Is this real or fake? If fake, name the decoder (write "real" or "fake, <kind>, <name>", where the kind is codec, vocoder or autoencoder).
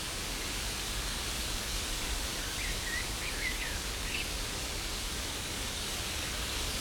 fake, codec, DAC